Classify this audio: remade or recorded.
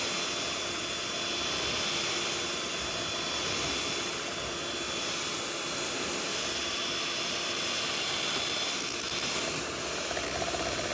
recorded